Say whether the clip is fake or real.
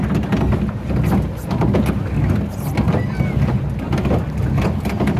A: real